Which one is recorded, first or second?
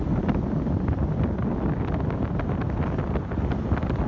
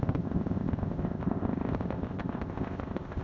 first